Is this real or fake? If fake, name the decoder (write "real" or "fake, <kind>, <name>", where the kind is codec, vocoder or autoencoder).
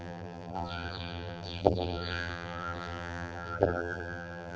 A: fake, vocoder, BigVGAN v2